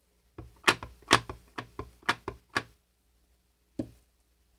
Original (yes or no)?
yes